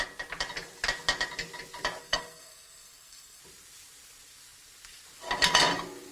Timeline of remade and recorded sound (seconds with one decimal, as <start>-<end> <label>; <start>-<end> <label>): 0.0-2.0 recorded; 2.0-3.4 remade; 3.4-6.1 recorded